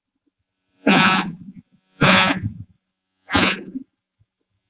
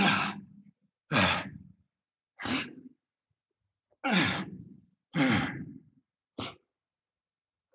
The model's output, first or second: first